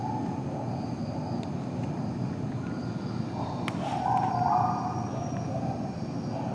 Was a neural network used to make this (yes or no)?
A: no